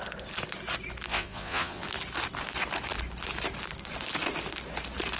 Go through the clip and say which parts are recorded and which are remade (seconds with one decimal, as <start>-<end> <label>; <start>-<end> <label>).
0.0-1.1 recorded; 1.1-1.8 remade; 1.8-5.2 recorded